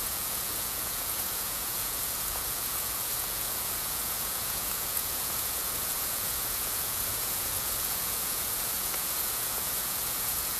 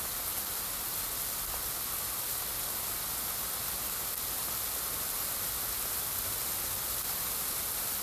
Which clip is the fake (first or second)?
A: first